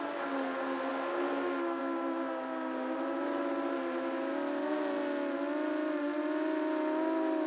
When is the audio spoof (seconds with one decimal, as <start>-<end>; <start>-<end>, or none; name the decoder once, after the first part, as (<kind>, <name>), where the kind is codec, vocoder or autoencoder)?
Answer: none